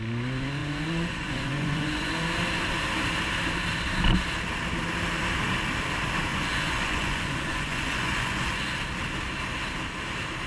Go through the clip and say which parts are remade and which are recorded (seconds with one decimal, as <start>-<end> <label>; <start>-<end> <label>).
0.0-0.6 recorded; 0.6-2.1 remade; 2.1-6.3 recorded; 6.3-8.7 remade; 8.7-10.5 recorded